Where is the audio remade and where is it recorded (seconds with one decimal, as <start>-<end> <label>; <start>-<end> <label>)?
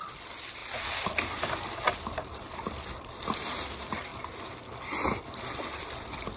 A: 0.0-4.1 remade; 4.1-4.8 recorded; 4.8-6.4 remade